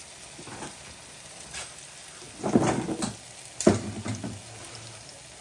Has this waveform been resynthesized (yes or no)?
no